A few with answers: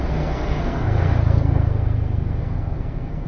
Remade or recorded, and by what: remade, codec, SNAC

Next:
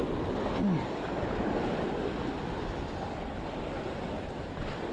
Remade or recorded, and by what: recorded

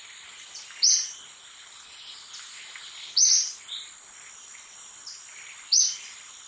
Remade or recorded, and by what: recorded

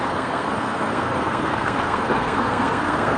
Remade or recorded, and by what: remade, codec, SNAC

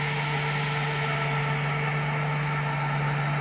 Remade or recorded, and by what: recorded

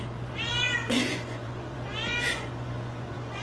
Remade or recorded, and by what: remade, vocoder, Vocos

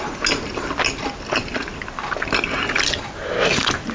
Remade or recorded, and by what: recorded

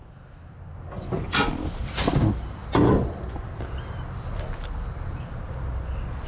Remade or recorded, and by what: recorded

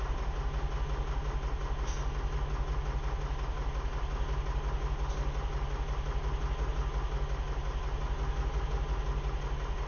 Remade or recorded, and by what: recorded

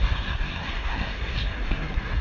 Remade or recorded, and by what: remade, codec, SNAC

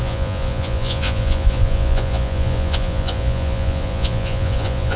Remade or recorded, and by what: remade, vocoder, Vocos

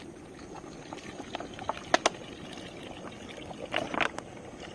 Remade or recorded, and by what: recorded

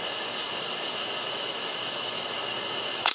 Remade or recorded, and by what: remade, autoencoder, DAC-VAE